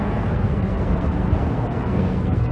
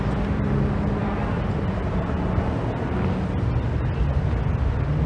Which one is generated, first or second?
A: first